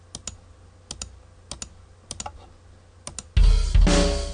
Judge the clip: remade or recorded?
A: recorded